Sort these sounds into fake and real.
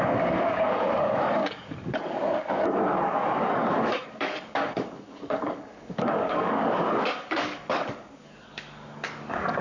fake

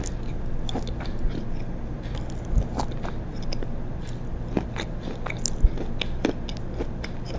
real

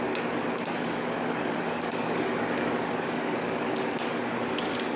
fake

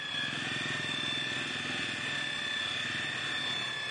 real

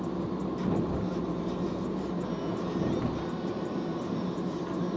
real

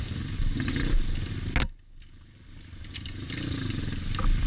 real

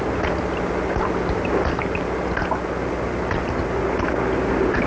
real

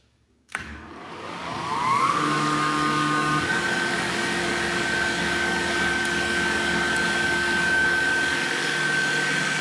fake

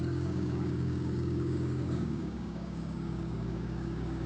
fake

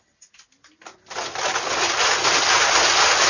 real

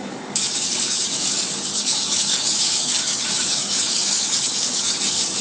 fake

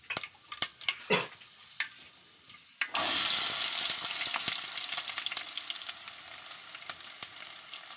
real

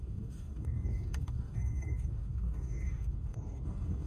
fake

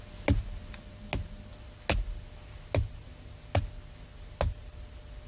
real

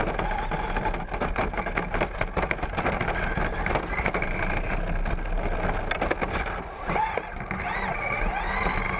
real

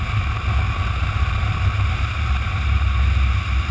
real